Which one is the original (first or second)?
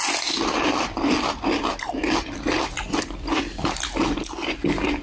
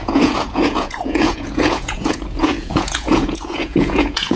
first